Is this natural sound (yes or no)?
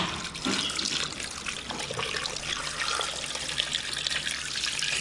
yes